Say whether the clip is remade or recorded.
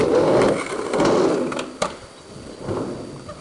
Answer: recorded